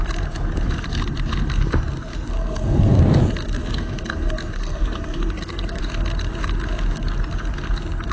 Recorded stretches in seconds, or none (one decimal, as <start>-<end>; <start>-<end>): 0.0-2.3; 3.0-3.6; 5.8-8.1